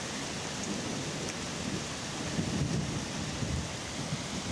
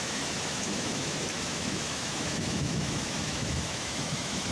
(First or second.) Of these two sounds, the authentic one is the first